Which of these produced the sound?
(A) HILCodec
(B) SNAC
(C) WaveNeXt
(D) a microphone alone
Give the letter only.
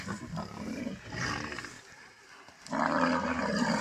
D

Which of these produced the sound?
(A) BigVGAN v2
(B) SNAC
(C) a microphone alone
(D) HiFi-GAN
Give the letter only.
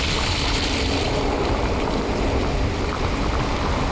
A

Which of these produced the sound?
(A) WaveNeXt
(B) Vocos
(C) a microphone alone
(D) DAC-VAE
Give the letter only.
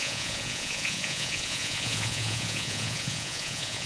B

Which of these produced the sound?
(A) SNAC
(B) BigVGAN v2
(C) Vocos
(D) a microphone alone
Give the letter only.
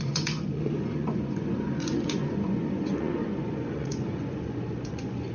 C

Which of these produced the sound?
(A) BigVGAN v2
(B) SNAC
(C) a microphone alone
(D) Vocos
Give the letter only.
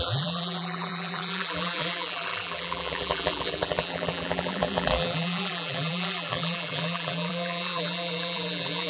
A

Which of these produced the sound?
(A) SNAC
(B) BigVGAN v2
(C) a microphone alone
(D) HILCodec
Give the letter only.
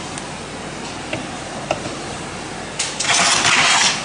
C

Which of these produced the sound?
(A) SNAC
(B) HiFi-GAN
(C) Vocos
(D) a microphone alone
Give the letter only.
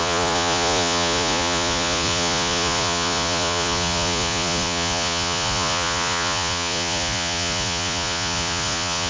C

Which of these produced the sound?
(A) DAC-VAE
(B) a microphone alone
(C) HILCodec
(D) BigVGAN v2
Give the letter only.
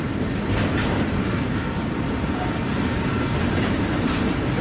B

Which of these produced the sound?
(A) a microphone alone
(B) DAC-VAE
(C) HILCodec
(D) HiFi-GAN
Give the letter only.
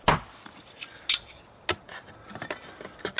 A